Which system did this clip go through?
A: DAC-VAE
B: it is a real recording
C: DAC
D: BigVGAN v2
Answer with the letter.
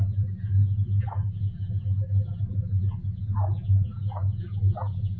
D